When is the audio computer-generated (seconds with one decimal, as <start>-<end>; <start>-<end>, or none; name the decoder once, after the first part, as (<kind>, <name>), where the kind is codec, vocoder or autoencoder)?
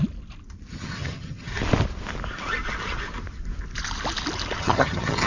0.7-1.5 (vocoder, HiFi-GAN); 4.6-5.3